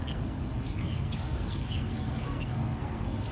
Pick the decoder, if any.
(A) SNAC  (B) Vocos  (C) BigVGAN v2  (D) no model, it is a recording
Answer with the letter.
A